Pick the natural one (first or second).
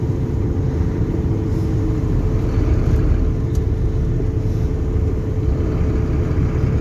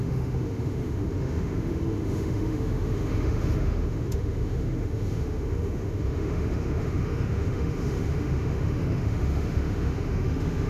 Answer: first